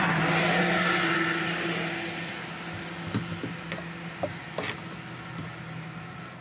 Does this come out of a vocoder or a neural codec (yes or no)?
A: no